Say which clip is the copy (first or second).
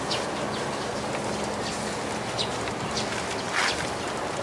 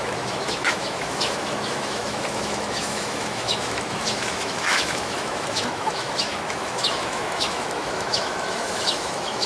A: second